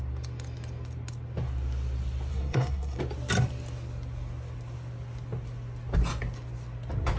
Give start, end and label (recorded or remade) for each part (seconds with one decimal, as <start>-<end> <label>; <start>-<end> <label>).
0.0-2.3 recorded; 2.3-3.0 remade; 3.0-7.2 recorded